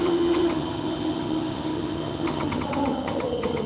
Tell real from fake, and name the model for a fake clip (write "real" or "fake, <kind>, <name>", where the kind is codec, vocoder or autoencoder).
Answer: fake, vocoder, HiFi-GAN